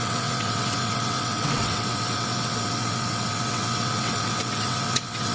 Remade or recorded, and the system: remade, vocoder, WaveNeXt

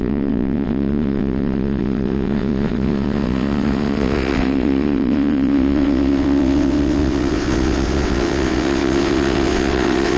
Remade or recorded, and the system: remade, vocoder, WaveNeXt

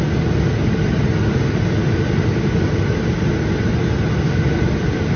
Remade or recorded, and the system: recorded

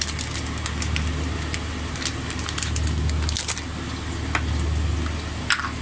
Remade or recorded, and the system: recorded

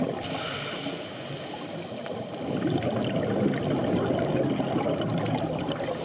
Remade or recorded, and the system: recorded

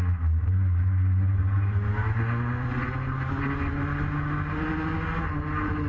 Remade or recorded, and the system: recorded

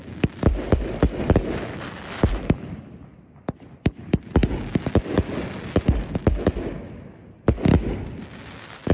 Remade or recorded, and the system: recorded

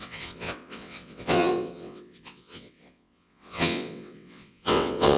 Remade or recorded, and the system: remade, vocoder, WaveNeXt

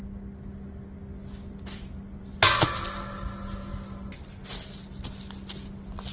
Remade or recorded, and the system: recorded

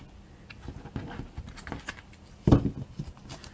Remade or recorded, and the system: recorded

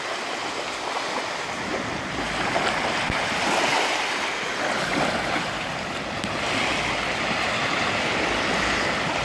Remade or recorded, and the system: recorded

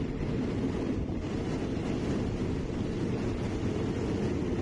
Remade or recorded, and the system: recorded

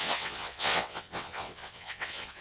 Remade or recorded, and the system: remade, vocoder, WaveNeXt